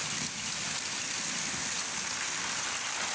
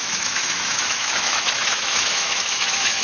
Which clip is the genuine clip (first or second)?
first